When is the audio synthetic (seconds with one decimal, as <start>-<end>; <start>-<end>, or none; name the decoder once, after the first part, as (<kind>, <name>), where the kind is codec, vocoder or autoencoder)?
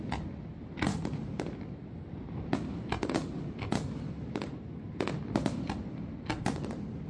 none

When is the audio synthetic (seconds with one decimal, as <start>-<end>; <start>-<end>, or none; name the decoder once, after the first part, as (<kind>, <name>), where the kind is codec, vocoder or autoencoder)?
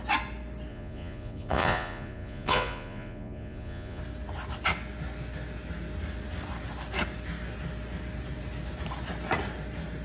0.7-4.0 (vocoder, Vocos)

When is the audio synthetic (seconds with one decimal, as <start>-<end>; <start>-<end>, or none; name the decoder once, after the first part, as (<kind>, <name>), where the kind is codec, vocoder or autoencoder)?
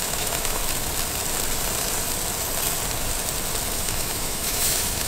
0.0-0.6 (autoencoder, DAC-VAE); 3.7-5.1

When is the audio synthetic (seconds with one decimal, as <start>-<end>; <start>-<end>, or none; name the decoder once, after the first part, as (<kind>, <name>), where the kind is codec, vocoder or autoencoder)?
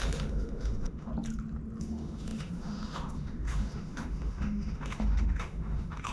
0.0-1.1 (autoencoder, DAC-VAE); 1.8-6.1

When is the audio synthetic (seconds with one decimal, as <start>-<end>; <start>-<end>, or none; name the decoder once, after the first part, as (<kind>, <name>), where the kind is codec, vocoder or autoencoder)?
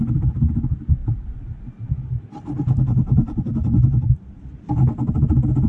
none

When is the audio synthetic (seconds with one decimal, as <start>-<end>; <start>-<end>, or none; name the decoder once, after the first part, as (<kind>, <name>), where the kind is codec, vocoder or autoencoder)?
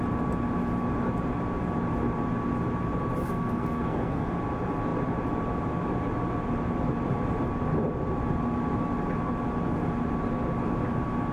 3.2-4.3 (codec, SNAC)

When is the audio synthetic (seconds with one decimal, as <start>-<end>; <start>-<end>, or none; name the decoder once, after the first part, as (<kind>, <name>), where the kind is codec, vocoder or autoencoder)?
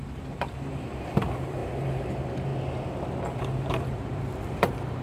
0.0-2.5 (vocoder, BigVGAN v2); 3.4-5.0